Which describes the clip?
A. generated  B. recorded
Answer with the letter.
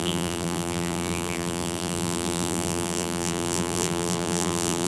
A